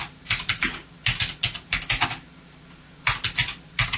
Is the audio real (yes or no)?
yes